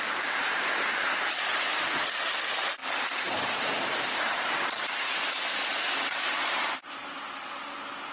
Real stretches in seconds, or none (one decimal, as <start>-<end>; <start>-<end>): 7.0-8.1